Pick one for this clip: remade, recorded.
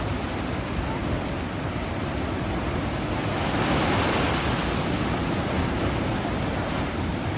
recorded